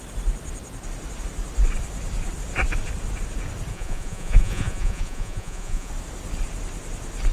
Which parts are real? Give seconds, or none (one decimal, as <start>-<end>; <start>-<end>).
0.0-3.7; 5.9-7.3